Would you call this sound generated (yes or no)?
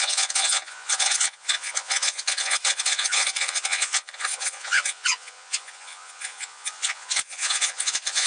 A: yes